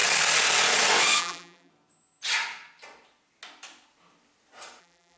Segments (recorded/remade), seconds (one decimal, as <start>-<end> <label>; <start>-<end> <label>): 0.0-1.2 recorded; 1.2-1.7 remade; 1.7-4.8 recorded; 4.8-5.2 remade